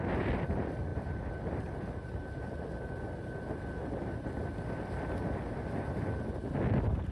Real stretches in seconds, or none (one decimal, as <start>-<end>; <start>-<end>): 0.0-7.1